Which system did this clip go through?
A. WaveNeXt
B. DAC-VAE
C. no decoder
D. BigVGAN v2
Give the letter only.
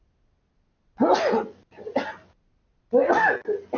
C